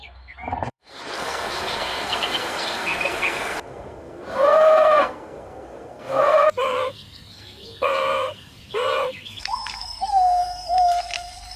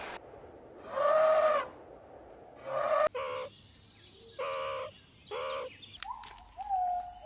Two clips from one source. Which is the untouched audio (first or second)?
second